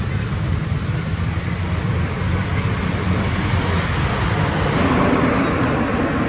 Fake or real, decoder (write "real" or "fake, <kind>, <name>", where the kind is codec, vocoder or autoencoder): real